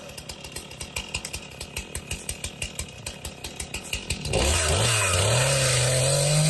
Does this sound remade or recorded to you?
recorded